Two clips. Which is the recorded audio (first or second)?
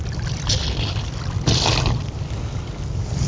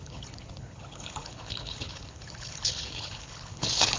first